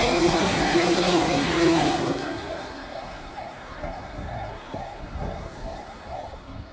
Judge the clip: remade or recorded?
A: remade